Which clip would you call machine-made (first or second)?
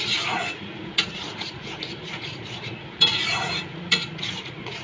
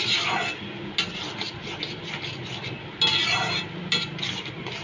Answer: first